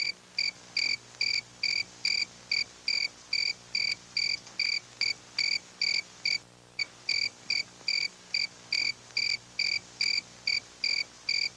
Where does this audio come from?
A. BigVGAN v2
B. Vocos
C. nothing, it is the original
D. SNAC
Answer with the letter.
C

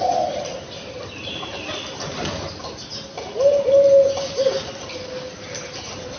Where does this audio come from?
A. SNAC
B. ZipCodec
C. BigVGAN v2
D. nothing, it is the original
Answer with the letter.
D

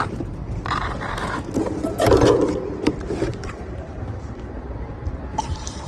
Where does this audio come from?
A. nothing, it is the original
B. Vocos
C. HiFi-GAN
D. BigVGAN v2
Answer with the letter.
D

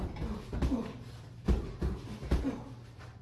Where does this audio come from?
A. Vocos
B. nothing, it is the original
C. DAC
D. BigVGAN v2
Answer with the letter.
D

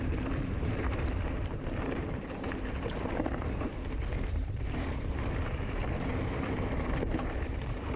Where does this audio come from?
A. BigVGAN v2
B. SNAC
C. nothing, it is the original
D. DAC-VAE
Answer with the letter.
A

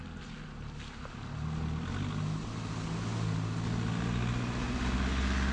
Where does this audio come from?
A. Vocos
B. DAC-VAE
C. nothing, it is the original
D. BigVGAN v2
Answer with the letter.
C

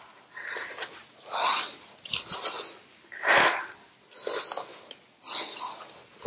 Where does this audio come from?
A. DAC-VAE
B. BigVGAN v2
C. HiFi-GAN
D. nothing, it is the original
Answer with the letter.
D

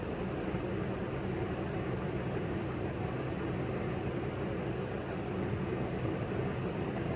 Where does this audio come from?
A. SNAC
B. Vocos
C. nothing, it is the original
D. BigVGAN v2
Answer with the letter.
C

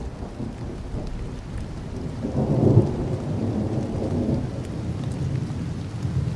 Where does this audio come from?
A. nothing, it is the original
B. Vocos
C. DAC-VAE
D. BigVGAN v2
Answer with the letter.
A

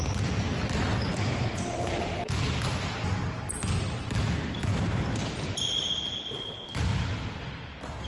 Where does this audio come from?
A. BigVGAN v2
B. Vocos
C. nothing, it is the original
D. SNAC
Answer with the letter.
C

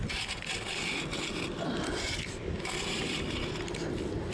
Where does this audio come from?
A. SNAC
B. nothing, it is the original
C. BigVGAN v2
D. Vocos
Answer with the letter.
B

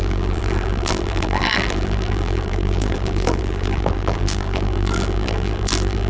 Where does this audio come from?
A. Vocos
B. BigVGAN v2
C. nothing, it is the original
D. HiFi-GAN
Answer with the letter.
B